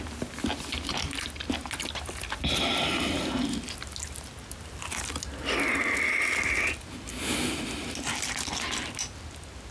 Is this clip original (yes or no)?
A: yes